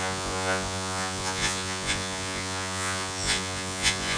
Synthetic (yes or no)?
yes